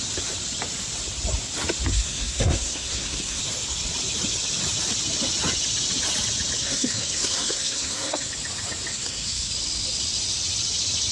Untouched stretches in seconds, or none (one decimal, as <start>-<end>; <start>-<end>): 0.0-1.9; 3.4-6.6; 8.3-8.9; 9.5-11.1